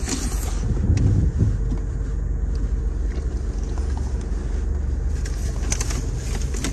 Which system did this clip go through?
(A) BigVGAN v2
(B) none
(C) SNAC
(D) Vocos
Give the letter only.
B